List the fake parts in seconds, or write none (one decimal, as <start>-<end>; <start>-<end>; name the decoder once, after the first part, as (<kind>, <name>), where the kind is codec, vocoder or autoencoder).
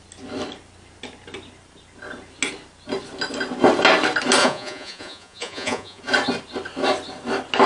4.4-6.0 (vocoder, Vocos)